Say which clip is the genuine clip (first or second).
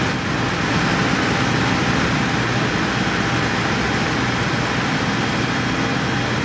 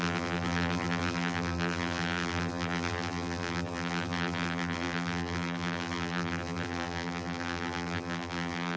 first